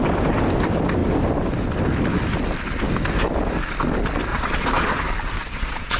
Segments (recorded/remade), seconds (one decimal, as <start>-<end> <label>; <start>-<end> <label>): 0.0-4.3 recorded; 4.3-5.0 remade; 5.0-5.4 recorded; 5.4-6.0 remade